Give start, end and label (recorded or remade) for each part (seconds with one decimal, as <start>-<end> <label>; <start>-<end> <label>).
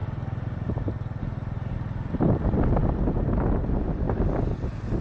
0.0-5.0 recorded